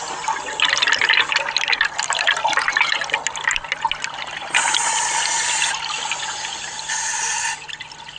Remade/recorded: recorded